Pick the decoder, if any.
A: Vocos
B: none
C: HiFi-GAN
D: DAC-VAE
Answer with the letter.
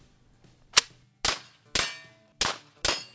B